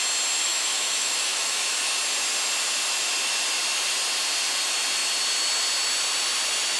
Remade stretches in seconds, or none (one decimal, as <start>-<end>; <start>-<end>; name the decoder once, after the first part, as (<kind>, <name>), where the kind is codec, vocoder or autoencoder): 0.4-1.9 (autoencoder, DAC-VAE)